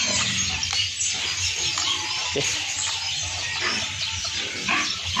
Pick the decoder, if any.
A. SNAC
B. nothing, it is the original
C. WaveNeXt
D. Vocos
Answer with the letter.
B